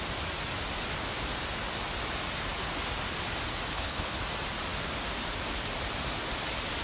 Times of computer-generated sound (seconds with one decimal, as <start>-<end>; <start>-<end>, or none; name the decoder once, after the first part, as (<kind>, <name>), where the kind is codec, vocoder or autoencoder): 3.7-4.2 (codec, HILCodec)